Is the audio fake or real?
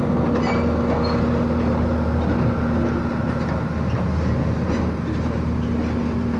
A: real